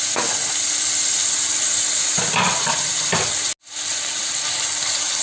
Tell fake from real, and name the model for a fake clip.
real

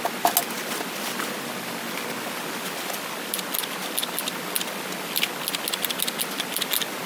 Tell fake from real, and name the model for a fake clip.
real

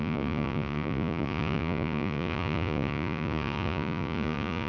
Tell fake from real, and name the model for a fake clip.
fake, vocoder, Vocos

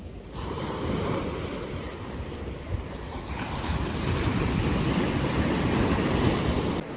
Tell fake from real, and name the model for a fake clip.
real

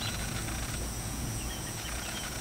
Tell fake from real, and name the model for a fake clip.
fake, vocoder, Vocos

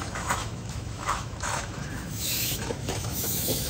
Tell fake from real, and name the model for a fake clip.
fake, autoencoder, DAC-VAE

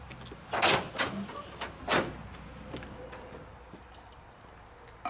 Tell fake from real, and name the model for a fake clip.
real